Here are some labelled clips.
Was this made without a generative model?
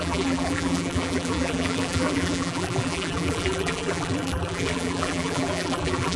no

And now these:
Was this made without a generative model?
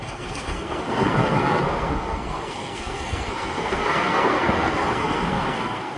no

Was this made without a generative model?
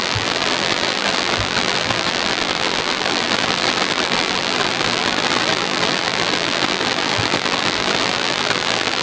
no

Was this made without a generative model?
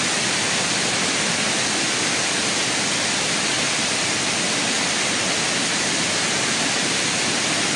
yes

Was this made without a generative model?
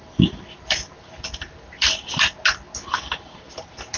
yes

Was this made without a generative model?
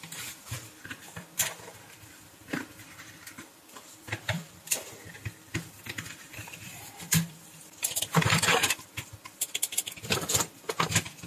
no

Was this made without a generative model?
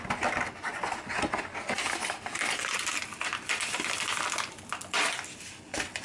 yes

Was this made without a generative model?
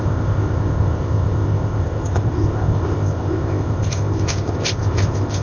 no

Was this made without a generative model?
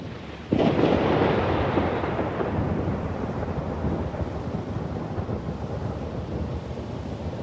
yes